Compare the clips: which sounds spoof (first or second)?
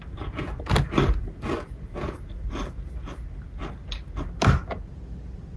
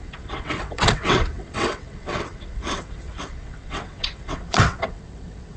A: second